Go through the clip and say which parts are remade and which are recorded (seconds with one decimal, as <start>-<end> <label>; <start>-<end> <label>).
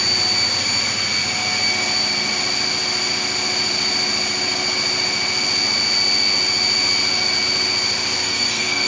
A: 0.0-8.2 recorded; 8.2-8.9 remade